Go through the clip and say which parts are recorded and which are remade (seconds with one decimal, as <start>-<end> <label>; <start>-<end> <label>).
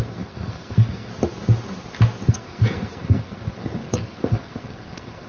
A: 0.0-1.1 remade; 1.1-2.3 recorded; 2.3-5.3 remade